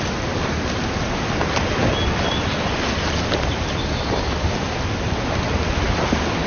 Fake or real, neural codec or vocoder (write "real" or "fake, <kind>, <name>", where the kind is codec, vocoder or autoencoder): real